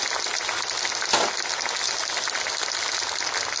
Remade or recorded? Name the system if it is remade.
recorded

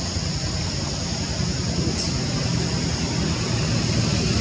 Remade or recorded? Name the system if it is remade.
recorded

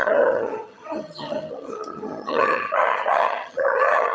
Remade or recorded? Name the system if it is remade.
remade, vocoder, HiFi-GAN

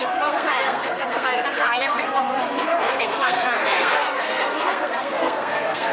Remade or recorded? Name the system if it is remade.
remade, codec, SNAC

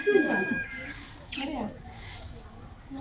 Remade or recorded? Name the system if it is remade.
remade, codec, DAC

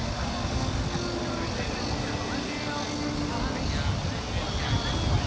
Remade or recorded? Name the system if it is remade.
recorded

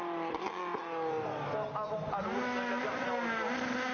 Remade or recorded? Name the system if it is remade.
recorded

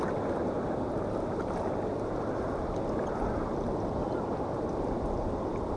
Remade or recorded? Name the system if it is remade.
recorded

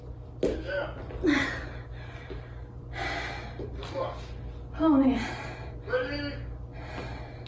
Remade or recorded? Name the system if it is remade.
recorded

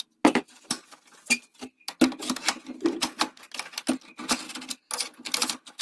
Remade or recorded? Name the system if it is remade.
recorded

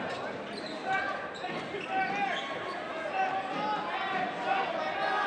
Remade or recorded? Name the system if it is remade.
recorded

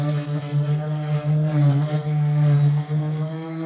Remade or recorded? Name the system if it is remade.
remade, codec, SNAC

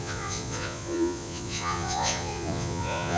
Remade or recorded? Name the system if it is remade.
remade, vocoder, Vocos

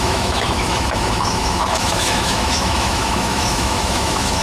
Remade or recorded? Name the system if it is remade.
remade, autoencoder, DAC-VAE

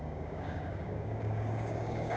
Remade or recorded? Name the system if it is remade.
remade, codec, DAC